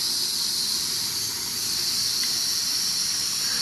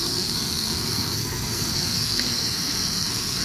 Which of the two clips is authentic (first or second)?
first